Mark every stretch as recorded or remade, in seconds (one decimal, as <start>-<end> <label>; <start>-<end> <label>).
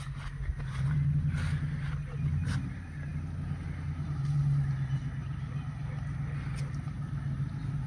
0.0-7.9 recorded